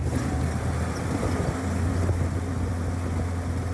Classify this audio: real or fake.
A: real